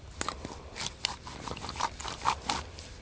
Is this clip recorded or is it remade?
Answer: recorded